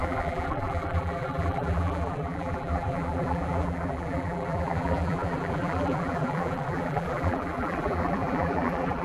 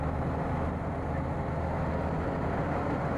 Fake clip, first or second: first